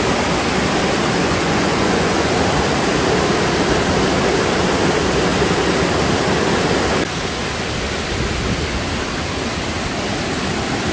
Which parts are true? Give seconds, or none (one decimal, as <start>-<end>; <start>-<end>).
0.0-1.2; 2.3-10.9